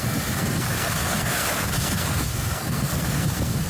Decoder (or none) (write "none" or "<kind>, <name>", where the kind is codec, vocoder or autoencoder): codec, SNAC